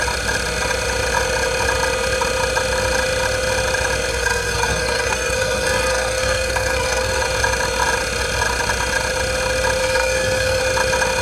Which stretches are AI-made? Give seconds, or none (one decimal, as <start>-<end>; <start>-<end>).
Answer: 4.1-7.2; 9.8-10.6